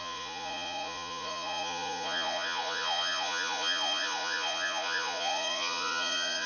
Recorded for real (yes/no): no